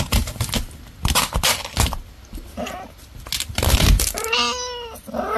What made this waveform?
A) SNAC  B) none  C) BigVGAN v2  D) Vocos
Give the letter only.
B